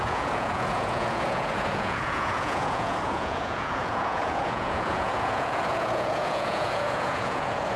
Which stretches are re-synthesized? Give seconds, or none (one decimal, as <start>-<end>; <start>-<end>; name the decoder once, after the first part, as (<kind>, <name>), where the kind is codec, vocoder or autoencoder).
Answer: 0.0-7.8 (vocoder, Vocos)